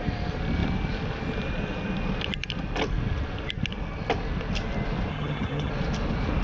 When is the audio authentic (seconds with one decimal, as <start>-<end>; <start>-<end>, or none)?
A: 0.0-5.1; 5.7-6.4